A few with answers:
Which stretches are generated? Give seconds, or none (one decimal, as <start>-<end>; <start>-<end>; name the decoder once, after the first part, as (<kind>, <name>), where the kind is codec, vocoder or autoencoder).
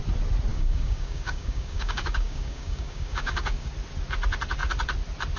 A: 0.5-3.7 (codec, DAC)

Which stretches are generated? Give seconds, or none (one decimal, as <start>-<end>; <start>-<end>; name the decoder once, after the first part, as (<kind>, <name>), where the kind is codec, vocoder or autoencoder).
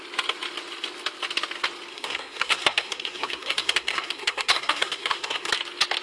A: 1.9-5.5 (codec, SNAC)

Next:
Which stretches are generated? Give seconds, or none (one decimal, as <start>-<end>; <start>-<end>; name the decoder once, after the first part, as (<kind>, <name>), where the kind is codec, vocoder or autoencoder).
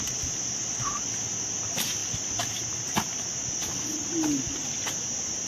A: none